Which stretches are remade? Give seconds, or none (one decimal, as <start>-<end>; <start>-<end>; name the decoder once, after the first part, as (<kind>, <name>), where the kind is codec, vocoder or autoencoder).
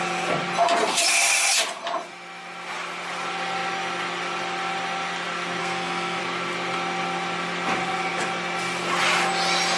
5.6-6.2 (codec, SNAC)